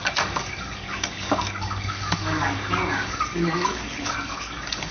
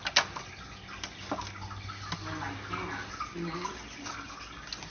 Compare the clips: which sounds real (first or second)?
second